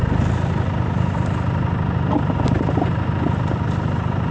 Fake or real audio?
real